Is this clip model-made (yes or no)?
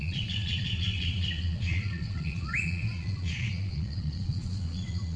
yes